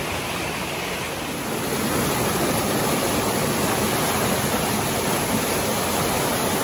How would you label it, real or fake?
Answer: real